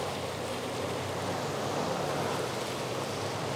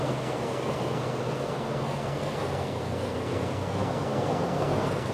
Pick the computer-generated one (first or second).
second